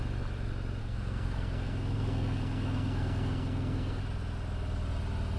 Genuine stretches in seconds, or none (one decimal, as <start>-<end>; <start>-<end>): 0.0-0.8; 4.0-5.4